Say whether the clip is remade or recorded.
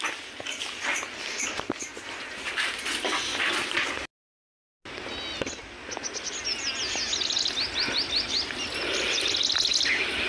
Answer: recorded